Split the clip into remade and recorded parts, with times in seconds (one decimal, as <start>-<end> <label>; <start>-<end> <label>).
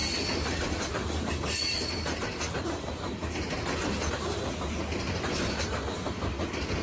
0.0-6.8 recorded